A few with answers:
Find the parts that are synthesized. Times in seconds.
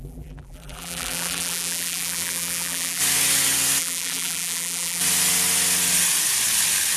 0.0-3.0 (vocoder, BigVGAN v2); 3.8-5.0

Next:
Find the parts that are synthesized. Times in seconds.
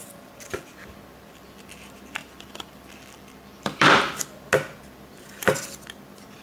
2.2-4.2 (vocoder, BigVGAN v2)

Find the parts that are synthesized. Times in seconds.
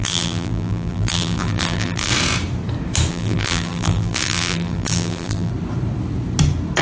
0.0-2.1 (vocoder, BigVGAN v2); 3.1-5.5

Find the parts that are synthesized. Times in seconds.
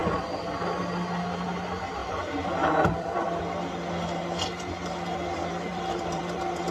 2.0-3.4 (vocoder, BigVGAN v2); 5.7-6.2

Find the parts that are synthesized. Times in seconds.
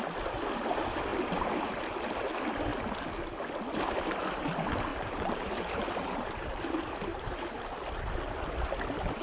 1.1-1.7 (vocoder, BigVGAN v2); 4.9-6.6; 7.1-7.9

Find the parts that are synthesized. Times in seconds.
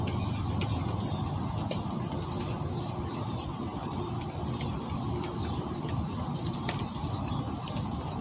none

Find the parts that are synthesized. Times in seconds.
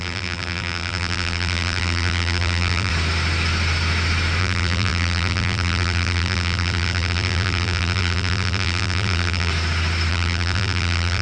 0.0-2.9 (vocoder, BigVGAN v2); 4.4-9.5; 10.1-11.2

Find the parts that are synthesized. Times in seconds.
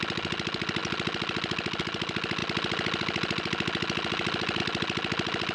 none